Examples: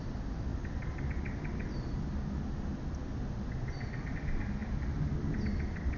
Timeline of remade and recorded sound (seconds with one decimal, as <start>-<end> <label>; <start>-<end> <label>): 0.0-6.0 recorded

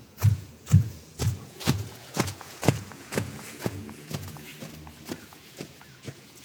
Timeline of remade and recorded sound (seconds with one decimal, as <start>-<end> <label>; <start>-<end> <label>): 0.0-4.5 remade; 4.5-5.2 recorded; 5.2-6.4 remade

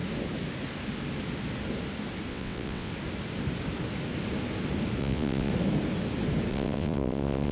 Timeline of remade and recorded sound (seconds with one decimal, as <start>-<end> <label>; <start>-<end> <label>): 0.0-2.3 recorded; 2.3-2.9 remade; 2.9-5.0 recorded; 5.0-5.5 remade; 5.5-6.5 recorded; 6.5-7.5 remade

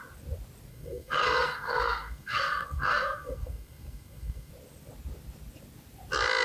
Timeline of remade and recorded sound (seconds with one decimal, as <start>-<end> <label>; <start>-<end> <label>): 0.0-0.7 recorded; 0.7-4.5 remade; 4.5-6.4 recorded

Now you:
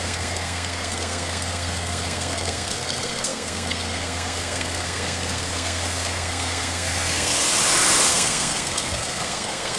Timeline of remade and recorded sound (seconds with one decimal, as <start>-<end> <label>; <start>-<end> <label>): 0.0-7.3 remade; 7.3-8.1 recorded; 8.1-9.8 remade

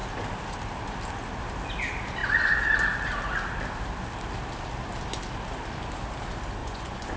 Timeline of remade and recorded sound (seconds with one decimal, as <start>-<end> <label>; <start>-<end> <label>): 0.0-6.6 recorded; 6.6-7.2 remade